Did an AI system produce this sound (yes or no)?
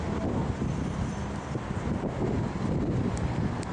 no